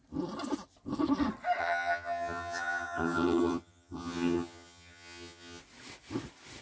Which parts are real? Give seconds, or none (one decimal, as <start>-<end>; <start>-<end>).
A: 0.0-1.6; 5.6-6.6

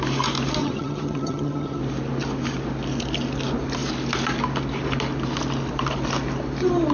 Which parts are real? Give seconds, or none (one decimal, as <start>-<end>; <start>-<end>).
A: 0.0-0.6; 1.8-6.9